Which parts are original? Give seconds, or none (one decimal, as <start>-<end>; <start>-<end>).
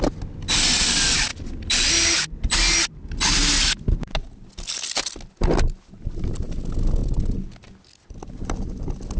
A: 0.0-9.2